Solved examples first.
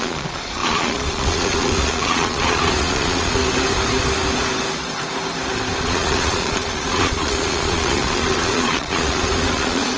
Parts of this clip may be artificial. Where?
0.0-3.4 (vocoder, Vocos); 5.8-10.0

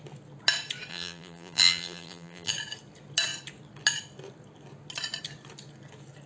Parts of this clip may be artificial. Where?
0.9-2.5 (vocoder, BigVGAN v2)

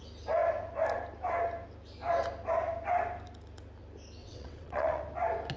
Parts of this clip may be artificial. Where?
4.2-5.0 (vocoder, WaveNeXt)

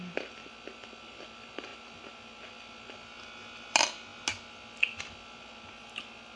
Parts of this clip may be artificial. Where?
none

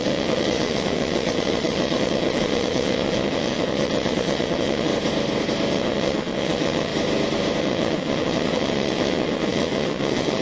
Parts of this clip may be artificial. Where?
0.0-4.9 (vocoder, WaveNeXt); 5.7-6.9; 7.6-10.4

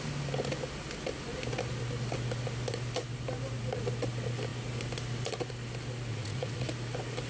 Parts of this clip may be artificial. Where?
6.1-6.7 (vocoder, Vocos)